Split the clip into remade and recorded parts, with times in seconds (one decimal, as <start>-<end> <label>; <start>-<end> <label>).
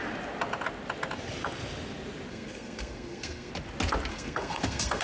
0.0-2.3 recorded; 2.3-3.5 remade; 3.5-4.1 recorded; 4.1-5.0 remade